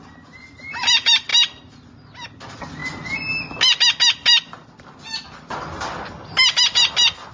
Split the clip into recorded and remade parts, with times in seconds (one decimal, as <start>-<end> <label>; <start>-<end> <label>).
0.0-7.3 recorded